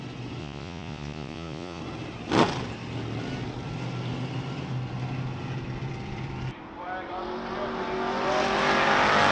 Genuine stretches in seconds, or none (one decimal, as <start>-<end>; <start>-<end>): 0.0-0.4; 1.8-9.3